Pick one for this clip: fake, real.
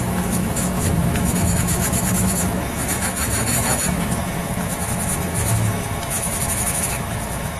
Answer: fake